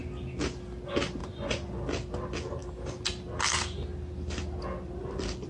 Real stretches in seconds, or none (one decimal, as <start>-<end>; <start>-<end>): 0.0-1.2; 1.8-5.5